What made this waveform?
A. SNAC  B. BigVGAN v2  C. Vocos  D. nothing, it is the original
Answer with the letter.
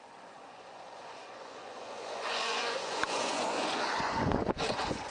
C